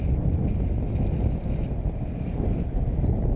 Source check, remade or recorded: recorded